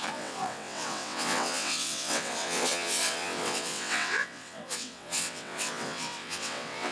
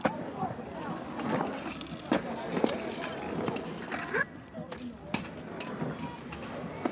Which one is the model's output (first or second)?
first